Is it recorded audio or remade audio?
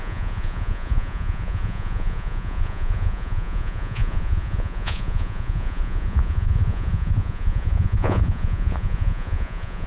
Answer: remade